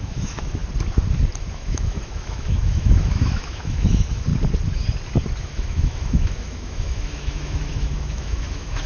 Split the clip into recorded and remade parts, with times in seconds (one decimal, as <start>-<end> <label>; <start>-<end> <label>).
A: 0.0-0.6 remade; 0.6-1.5 recorded; 1.5-4.3 remade; 4.3-5.4 recorded; 5.4-8.9 remade